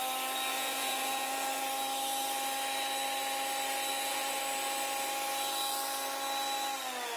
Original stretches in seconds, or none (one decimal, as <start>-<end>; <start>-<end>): 0.0-0.5; 1.6-3.9; 4.4-7.2